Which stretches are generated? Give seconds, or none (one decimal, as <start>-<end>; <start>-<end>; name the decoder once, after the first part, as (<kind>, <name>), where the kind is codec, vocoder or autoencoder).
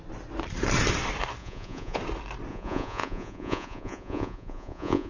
1.4-2.0 (vocoder, Vocos); 2.5-5.1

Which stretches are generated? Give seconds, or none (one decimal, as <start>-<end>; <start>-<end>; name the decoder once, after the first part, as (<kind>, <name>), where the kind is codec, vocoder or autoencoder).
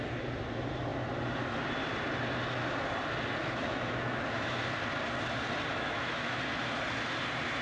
3.4-4.6 (autoencoder, DAC-VAE); 5.7-6.4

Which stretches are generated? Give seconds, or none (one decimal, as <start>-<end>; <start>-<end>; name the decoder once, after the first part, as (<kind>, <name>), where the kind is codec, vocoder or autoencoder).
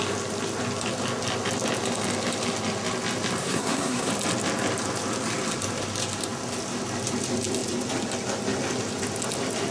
3.4-4.1 (codec, SNAC)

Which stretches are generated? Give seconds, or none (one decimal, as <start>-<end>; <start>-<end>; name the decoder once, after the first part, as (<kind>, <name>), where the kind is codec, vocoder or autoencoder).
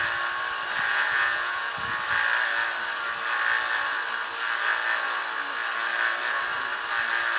0.9-1.7 (vocoder, Vocos)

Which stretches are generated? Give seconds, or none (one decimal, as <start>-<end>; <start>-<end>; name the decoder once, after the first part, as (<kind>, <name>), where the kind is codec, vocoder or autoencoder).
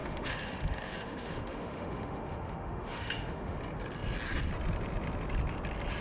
0.0-3.6 (autoencoder, DAC-VAE)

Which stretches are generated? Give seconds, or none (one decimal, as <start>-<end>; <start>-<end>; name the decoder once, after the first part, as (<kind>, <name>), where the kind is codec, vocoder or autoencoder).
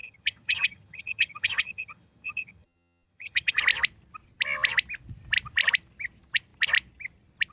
0.0-3.6 (vocoder, HiFi-GAN)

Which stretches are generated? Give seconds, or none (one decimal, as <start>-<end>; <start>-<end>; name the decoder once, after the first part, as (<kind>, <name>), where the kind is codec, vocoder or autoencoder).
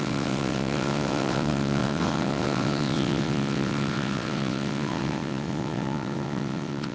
0.0-6.9 (vocoder, WaveNeXt)